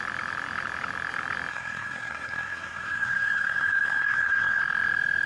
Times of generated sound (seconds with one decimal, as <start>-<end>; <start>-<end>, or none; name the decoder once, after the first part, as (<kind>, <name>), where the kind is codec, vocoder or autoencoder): 1.5-4.6 (codec, SNAC)